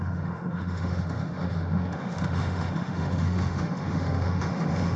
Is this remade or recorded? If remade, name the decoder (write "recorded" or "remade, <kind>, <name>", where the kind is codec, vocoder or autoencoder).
remade, autoencoder, DAC-VAE